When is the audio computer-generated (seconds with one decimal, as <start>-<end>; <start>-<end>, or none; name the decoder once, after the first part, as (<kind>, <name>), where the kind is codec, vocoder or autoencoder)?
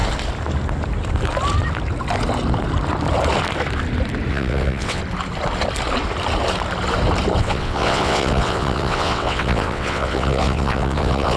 4.3-5.0 (vocoder, WaveNeXt); 7.4-11.4